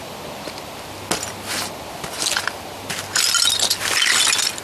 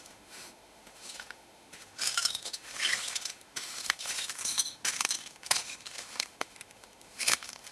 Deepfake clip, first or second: second